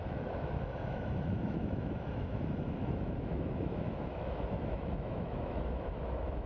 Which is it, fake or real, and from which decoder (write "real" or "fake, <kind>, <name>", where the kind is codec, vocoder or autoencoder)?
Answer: fake, autoencoder, DAC-VAE